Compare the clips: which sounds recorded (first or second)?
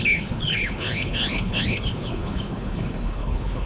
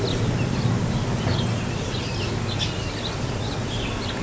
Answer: second